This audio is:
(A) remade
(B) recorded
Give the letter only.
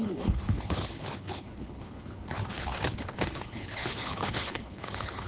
A